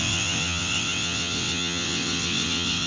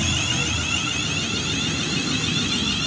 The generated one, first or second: first